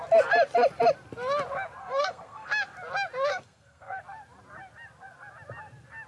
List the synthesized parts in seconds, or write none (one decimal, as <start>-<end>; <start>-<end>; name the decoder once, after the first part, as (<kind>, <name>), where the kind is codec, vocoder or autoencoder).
1.8-2.5 (codec, SNAC); 3.3-4.0